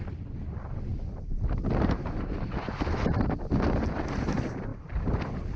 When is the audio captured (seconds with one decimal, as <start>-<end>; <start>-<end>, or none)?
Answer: 0.0-5.6